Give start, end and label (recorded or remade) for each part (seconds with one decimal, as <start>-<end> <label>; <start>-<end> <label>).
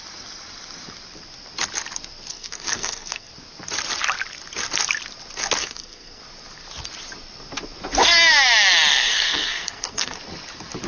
0.0-2.3 recorded; 2.3-3.3 remade; 3.3-5.6 recorded; 5.6-6.2 remade; 6.2-8.9 recorded; 8.9-10.2 remade; 10.2-10.9 recorded